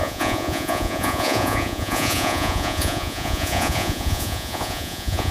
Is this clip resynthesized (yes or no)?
yes